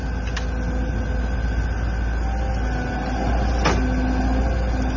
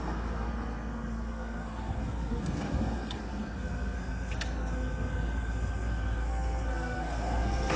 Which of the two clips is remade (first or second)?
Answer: second